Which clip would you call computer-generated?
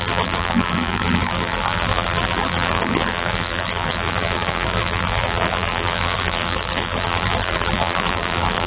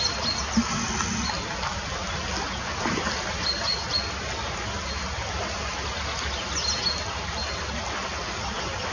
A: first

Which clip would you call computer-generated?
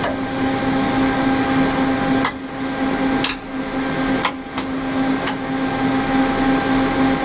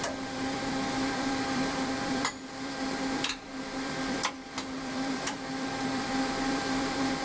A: second